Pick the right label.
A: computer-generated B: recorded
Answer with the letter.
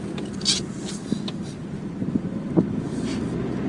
B